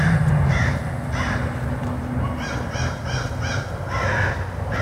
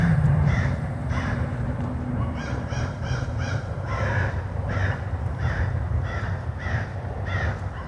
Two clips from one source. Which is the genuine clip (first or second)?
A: first